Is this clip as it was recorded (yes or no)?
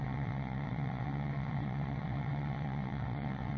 no